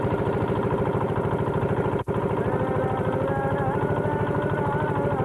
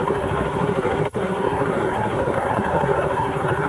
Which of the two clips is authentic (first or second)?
first